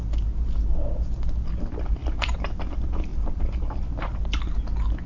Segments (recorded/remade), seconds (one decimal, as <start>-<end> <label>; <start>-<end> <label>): 0.0-2.0 recorded; 2.0-2.6 remade; 2.6-3.1 recorded; 3.1-4.4 remade; 4.4-5.1 recorded